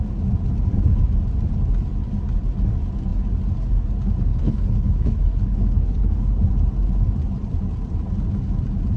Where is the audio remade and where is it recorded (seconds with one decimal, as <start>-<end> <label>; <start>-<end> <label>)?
0.0-4.3 recorded; 4.3-6.4 remade; 6.4-9.0 recorded

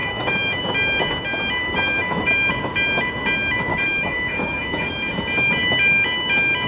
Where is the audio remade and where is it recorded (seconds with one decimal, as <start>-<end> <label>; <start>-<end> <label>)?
0.0-0.6 remade; 0.6-1.6 recorded; 1.6-2.3 remade; 2.3-3.7 recorded; 3.7-4.9 remade; 4.9-6.7 recorded

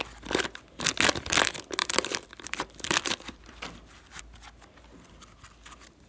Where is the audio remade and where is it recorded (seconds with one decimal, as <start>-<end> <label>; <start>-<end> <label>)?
0.0-1.8 recorded; 1.8-4.2 remade; 4.2-6.1 recorded

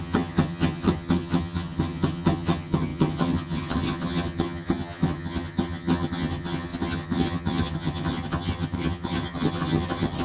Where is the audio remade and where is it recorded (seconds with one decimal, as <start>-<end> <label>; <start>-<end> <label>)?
0.0-10.2 remade